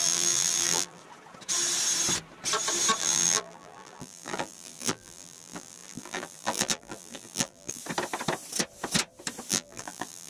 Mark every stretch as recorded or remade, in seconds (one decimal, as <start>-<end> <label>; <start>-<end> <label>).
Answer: 0.0-1.0 remade; 1.0-3.0 recorded; 3.0-7.8 remade; 7.8-9.5 recorded; 9.5-10.3 remade